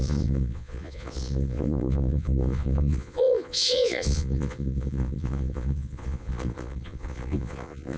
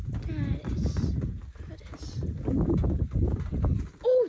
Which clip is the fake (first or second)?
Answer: first